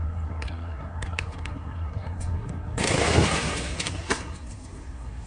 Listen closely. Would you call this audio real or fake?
fake